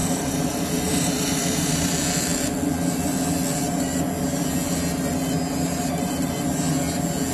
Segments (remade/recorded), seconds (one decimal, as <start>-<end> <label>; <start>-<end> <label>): 0.0-1.9 remade; 1.9-7.3 recorded